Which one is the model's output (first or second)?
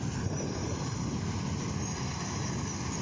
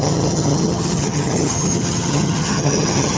second